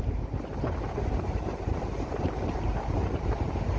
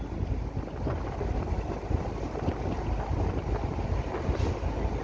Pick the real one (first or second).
second